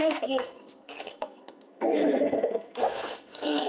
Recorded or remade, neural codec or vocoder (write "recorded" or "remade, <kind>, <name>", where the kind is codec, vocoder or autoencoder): remade, codec, SNAC